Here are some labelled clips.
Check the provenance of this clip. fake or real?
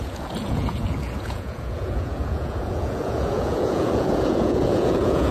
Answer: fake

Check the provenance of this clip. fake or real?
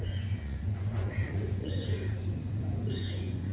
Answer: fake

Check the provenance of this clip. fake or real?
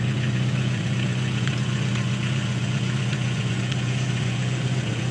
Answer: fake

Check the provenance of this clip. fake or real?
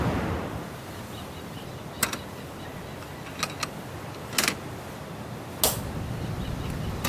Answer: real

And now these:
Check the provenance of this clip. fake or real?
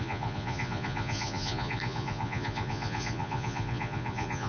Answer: fake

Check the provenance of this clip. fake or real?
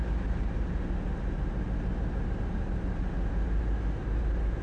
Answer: real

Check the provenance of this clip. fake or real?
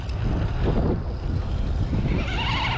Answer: real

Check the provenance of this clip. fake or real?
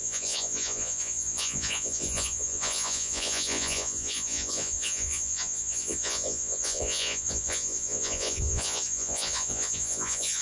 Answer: fake